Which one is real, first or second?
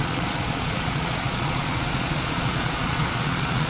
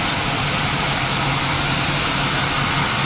second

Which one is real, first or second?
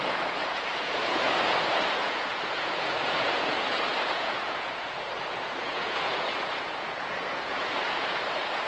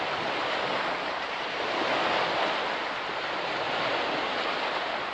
second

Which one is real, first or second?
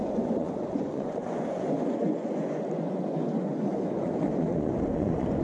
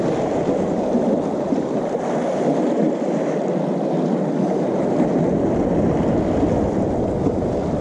second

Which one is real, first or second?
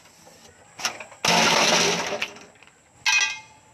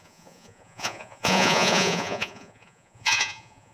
first